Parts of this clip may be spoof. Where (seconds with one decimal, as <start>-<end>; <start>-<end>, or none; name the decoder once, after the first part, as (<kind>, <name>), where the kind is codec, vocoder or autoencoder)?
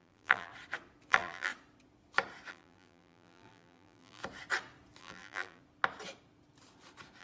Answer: 0.0-0.5 (vocoder, BigVGAN v2); 1.1-1.5; 2.5-4.2; 5.0-5.6